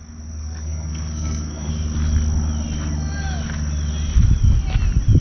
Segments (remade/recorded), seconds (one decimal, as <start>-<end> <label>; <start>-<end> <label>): 0.0-0.4 recorded; 0.4-1.7 remade; 1.7-5.2 recorded